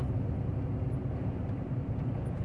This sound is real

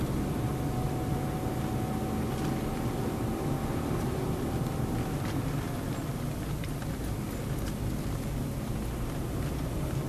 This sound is real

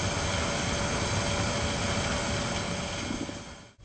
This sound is real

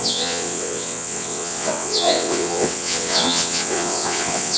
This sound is fake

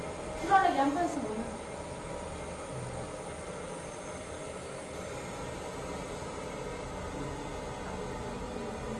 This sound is real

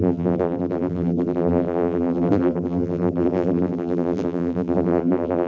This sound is fake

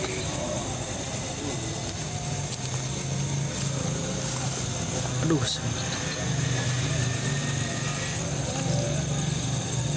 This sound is real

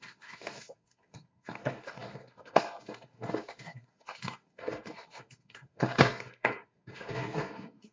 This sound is fake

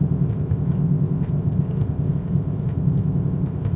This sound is fake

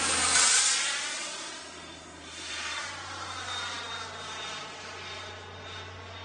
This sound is real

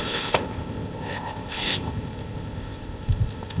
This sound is fake